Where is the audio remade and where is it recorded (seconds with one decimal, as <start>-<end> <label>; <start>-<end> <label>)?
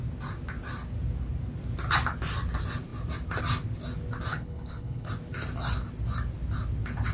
0.0-4.3 recorded; 4.3-5.1 remade; 5.1-7.1 recorded